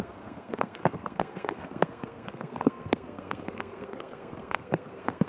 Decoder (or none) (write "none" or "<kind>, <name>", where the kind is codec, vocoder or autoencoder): codec, SNAC